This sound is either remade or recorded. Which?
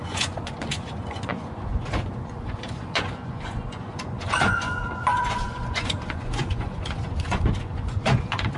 remade